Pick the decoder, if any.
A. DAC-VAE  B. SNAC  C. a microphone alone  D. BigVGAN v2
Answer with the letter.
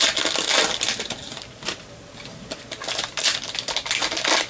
C